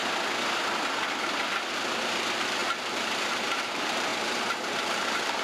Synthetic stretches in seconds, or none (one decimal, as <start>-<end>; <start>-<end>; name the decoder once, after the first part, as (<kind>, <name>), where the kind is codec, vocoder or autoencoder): 2.0-4.1 (vocoder, BigVGAN v2); 4.7-5.4